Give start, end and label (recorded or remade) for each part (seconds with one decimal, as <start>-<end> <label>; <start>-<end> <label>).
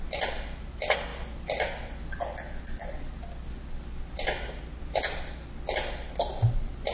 0.0-6.9 recorded